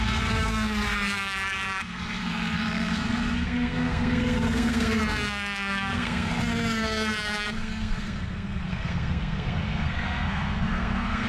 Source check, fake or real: fake